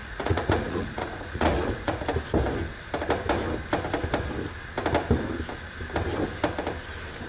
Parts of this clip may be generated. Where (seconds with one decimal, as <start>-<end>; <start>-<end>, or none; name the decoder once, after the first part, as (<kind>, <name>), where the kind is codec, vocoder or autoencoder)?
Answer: 0.0-2.0 (vocoder, Vocos)